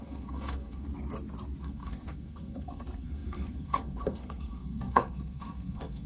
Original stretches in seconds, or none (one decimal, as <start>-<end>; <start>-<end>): 0.9-1.6

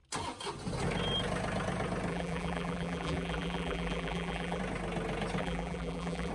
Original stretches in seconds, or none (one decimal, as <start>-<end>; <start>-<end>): 0.0-2.1; 4.6-5.4